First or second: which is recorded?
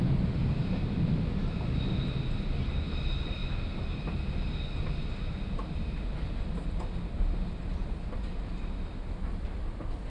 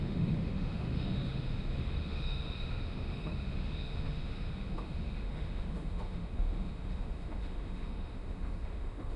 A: first